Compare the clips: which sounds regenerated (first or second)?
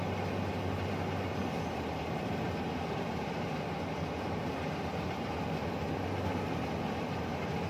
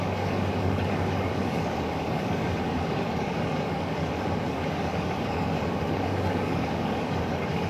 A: second